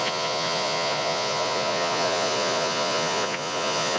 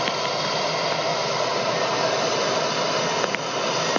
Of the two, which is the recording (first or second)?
second